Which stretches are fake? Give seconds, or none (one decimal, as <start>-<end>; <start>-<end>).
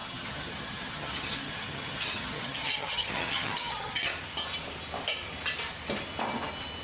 0.0-4.1